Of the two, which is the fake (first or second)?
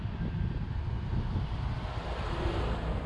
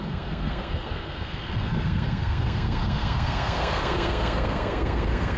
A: second